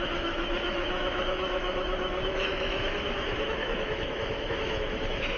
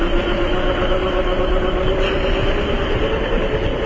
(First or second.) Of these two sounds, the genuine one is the second